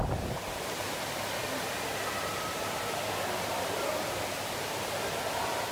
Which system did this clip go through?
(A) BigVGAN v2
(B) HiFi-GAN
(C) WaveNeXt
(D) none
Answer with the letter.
D